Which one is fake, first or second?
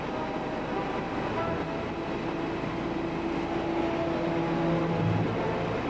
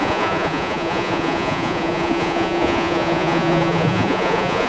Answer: second